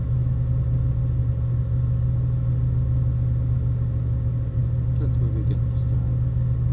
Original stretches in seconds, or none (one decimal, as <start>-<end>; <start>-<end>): 0.0-6.7